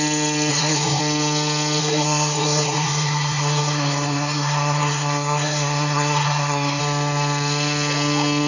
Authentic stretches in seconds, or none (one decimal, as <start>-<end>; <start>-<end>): 0.0-0.5; 1.0-1.8; 6.8-8.5

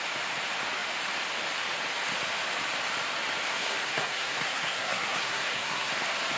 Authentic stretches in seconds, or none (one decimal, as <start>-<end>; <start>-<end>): 0.0-3.5; 5.9-6.4